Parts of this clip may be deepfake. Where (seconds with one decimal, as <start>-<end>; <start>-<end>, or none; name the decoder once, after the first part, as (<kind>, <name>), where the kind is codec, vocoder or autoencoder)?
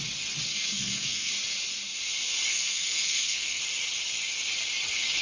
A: 0.5-1.3 (codec, SNAC); 2.5-3.6